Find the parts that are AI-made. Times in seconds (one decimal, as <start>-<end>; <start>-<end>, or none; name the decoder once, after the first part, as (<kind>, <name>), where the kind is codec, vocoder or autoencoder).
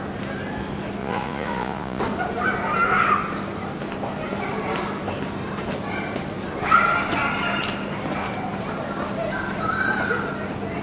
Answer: 1.0-2.0 (vocoder, Vocos)